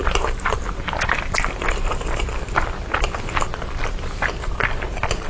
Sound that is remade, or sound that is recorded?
remade